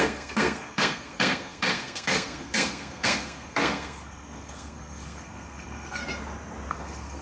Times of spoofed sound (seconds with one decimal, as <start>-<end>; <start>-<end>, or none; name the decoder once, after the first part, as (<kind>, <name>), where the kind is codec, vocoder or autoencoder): 0.0-6.0 (codec, SNAC); 6.7-7.2